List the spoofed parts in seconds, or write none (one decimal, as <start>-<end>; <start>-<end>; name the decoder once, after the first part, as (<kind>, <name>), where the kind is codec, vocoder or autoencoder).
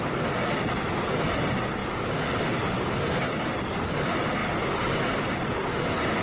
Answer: none